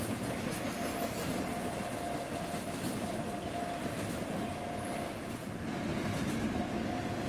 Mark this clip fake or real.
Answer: real